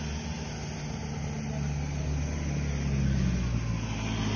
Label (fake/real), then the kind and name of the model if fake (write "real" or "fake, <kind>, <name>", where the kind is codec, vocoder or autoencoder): real